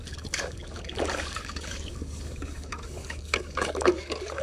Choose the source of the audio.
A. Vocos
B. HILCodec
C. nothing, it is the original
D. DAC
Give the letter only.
D